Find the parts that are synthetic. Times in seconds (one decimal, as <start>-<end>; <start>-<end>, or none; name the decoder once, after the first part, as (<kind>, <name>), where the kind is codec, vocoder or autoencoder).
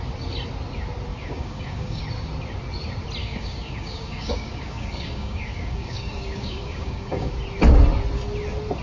1.1-2.0 (codec, DAC); 3.2-7.3